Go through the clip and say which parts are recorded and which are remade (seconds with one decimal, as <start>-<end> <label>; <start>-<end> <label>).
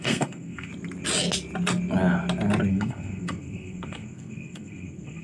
0.0-0.7 remade; 0.7-2.7 recorded; 2.7-5.2 remade